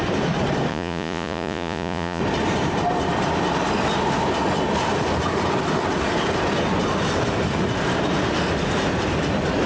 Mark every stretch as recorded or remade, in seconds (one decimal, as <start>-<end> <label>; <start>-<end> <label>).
0.0-0.7 recorded; 0.7-2.2 remade; 2.2-9.7 recorded